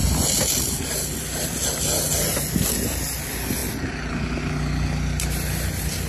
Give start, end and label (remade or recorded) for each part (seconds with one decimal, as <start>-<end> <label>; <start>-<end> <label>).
0.0-6.1 recorded